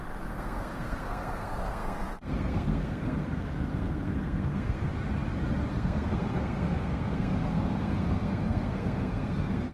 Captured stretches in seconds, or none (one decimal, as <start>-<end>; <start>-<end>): 4.9-5.7